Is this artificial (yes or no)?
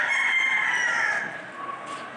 no